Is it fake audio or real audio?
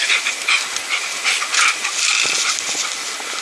real